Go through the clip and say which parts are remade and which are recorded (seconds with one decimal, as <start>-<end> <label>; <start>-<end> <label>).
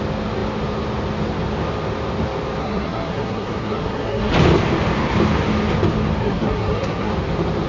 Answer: 0.0-2.6 recorded; 2.6-4.3 remade; 4.3-6.2 recorded; 6.2-7.1 remade; 7.1-7.7 recorded